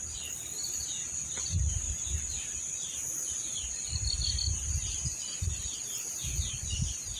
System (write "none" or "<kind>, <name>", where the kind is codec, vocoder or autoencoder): none